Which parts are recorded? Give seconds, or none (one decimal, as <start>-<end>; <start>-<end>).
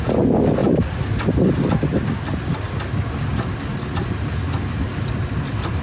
0.0-5.8